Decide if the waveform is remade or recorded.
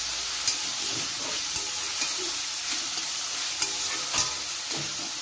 recorded